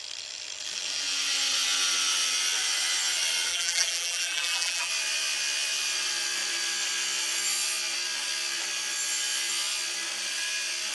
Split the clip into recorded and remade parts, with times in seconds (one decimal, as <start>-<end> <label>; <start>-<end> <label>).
0.0-3.5 recorded; 3.5-4.9 remade; 4.9-10.9 recorded